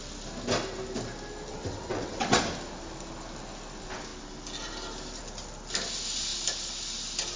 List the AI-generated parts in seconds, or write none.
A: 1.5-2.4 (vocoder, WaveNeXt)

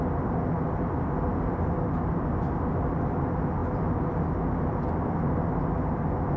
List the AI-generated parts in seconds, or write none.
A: 1.3-1.8 (vocoder, BigVGAN v2)